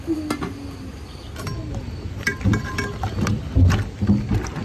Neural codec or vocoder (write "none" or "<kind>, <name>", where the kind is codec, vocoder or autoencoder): none